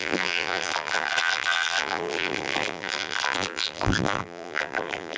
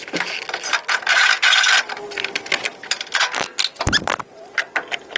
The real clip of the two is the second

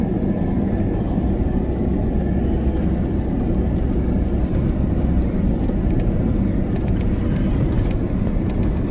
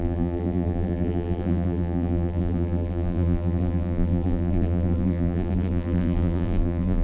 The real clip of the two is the first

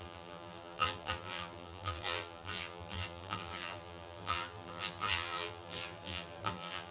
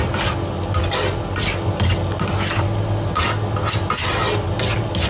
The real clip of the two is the second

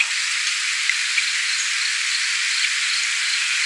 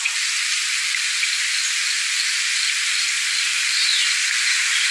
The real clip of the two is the first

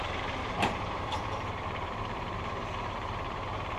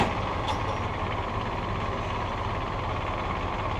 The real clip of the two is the second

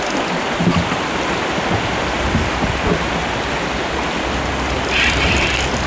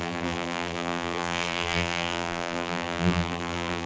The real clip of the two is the first